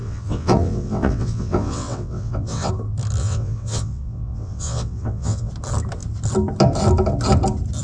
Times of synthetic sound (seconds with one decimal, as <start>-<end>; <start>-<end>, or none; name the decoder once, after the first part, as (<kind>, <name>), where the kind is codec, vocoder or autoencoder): 0.0-2.7 (vocoder, WaveNeXt); 3.2-5.5